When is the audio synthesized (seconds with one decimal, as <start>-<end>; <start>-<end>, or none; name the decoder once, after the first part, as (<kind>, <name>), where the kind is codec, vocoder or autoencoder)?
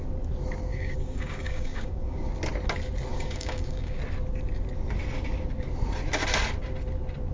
0.7-2.3 (codec, DAC); 3.1-4.0